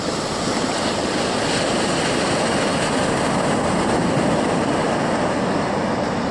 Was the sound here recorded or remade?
recorded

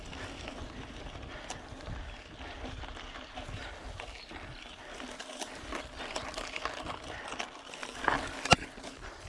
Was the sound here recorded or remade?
recorded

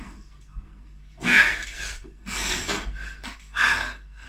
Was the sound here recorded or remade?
remade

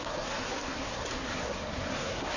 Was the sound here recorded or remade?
remade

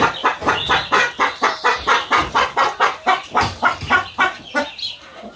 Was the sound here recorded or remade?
recorded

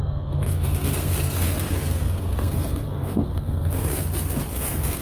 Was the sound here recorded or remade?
remade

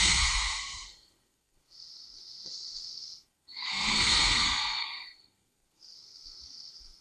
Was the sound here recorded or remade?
remade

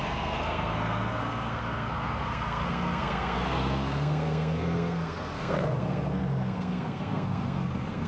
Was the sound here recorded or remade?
remade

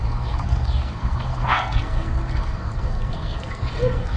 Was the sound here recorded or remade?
remade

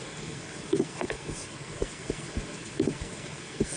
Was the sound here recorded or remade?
remade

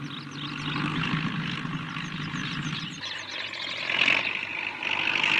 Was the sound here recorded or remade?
recorded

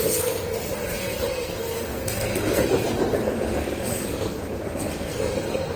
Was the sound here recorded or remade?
remade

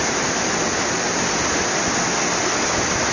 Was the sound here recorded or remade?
recorded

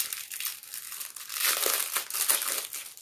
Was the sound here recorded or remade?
recorded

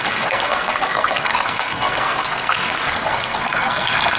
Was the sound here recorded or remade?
remade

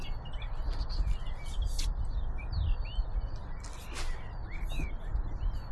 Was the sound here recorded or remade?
recorded